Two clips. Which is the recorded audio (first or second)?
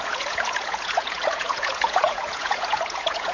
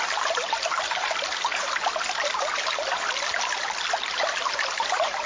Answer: second